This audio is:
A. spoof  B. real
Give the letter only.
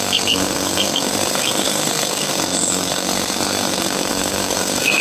A